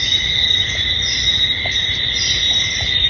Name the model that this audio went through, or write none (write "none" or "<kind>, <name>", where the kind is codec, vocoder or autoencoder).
none